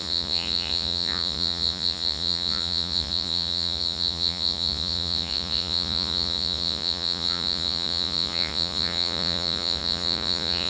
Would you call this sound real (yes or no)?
no